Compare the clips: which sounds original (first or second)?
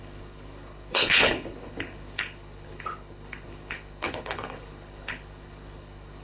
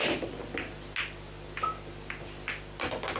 second